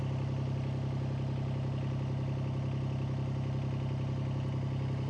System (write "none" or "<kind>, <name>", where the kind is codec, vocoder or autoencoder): none